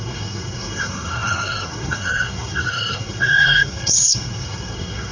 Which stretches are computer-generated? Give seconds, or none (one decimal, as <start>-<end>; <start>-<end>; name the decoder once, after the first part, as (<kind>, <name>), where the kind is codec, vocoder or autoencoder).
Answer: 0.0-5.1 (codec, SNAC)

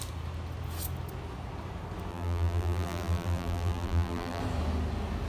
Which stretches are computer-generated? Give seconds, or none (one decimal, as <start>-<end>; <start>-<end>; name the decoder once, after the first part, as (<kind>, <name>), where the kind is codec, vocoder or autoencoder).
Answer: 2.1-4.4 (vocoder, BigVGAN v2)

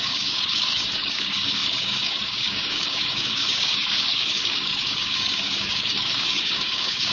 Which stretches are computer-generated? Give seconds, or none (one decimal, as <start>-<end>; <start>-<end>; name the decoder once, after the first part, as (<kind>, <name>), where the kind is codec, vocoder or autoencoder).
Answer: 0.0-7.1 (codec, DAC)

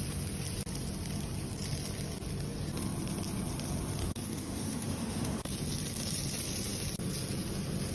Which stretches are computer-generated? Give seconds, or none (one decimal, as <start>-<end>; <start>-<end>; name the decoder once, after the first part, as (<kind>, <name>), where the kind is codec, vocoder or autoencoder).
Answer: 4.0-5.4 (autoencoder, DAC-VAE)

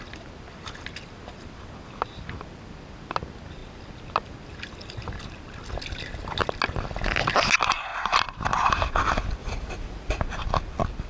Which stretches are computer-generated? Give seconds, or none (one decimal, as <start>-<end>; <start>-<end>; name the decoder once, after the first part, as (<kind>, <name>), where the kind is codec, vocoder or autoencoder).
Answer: 9.4-10.2 (vocoder, Vocos)